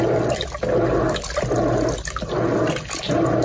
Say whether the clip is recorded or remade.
recorded